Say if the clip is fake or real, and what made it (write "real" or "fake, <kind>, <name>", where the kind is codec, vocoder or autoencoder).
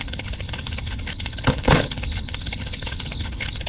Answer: fake, codec, HILCodec